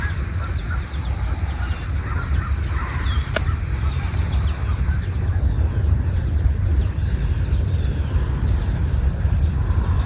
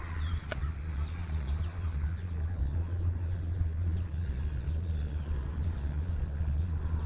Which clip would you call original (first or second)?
first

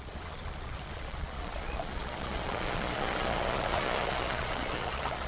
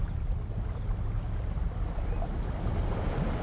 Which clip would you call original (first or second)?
second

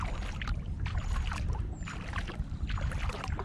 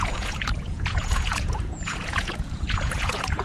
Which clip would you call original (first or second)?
first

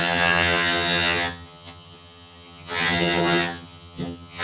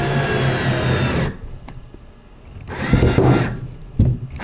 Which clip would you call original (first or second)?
second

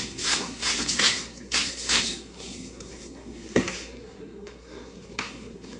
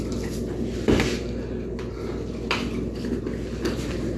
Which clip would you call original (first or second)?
second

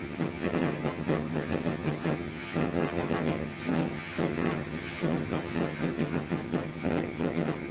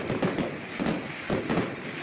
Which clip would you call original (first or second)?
second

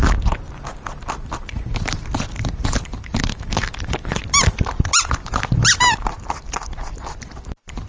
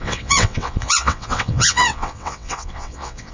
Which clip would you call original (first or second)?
first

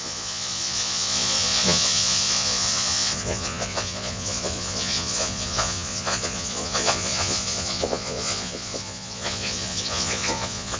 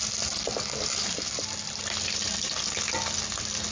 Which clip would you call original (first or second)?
second